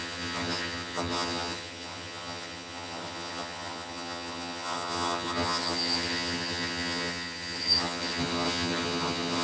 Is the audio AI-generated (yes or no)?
yes